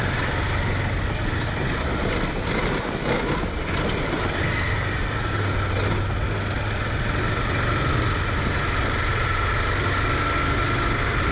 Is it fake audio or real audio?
real